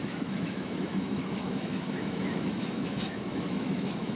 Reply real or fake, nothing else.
fake